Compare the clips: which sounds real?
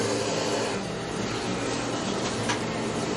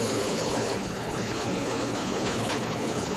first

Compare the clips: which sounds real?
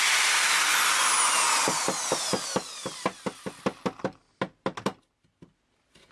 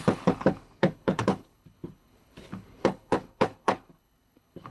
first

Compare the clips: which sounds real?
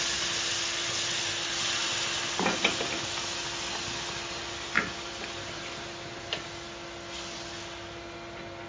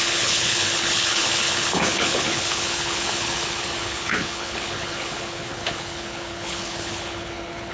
first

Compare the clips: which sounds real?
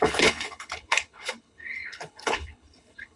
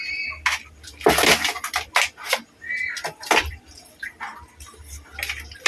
second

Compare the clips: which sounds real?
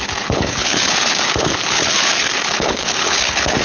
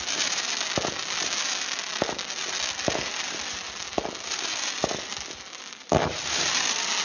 second